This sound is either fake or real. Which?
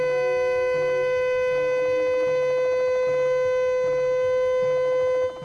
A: real